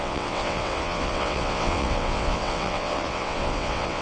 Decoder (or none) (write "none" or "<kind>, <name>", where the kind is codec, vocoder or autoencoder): vocoder, WaveNeXt